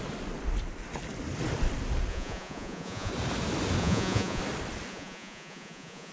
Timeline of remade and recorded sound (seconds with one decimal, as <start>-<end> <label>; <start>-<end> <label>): 0.0-2.1 recorded; 2.1-3.1 remade; 3.1-3.8 recorded; 3.8-4.4 remade; 4.4-4.9 recorded; 4.9-6.1 remade